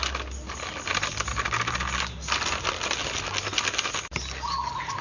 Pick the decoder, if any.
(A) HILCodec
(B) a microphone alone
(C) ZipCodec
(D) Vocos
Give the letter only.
B